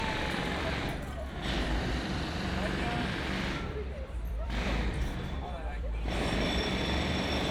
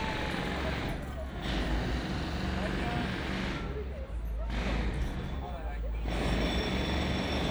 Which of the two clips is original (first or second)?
second